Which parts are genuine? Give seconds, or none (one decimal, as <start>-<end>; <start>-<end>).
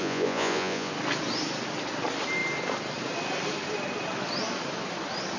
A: 0.9-5.4